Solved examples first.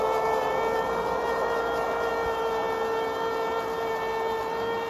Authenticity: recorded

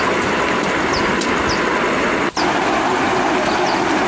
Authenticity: recorded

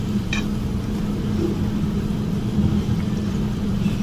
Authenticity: recorded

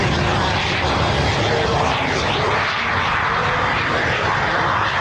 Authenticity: recorded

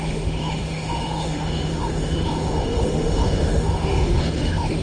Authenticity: remade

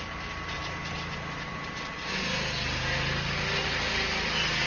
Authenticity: recorded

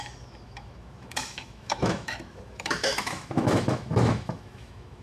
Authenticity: remade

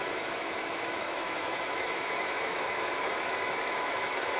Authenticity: remade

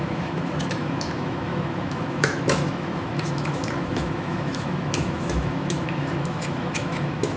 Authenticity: remade